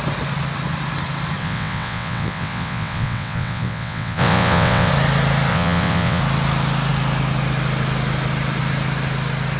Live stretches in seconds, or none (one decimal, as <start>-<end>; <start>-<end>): 0.0-1.4; 4.9-5.5; 6.2-9.6